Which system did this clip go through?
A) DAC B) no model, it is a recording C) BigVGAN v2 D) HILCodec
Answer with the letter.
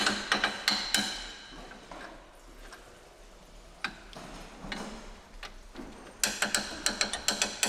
B